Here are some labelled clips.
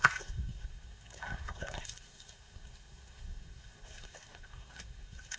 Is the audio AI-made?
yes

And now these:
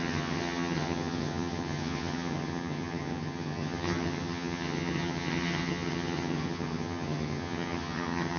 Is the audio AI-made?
yes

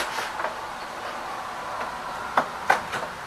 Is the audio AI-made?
no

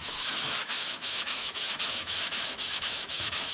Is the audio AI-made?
yes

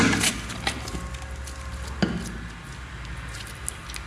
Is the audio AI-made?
no